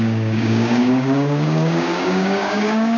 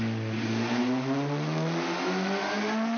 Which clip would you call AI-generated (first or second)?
first